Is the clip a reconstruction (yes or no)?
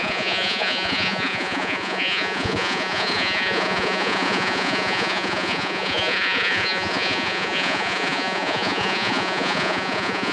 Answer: yes